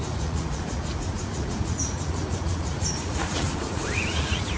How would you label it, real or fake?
fake